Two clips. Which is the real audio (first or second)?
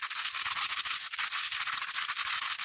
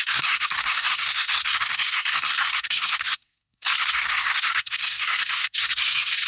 first